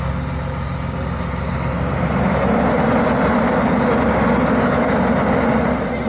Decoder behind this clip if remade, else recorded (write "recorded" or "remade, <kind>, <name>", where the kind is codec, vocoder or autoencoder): recorded